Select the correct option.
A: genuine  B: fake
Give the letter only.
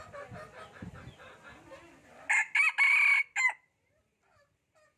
A